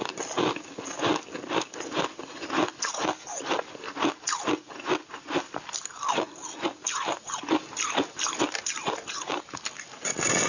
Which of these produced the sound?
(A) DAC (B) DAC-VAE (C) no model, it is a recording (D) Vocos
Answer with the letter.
C